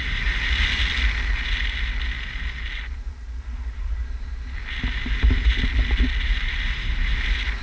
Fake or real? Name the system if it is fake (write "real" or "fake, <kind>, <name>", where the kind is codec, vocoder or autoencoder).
real